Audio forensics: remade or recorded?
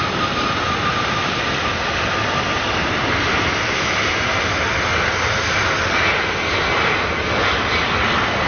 recorded